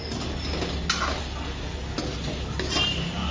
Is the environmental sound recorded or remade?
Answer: recorded